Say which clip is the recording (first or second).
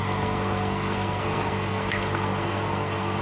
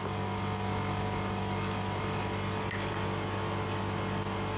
second